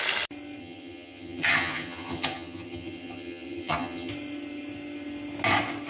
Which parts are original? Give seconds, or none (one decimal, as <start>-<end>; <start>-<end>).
0.0-0.6; 4.1-5.9